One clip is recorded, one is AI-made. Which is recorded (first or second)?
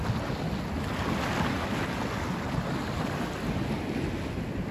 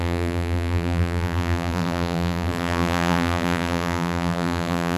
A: first